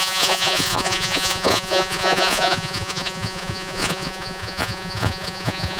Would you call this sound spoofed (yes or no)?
yes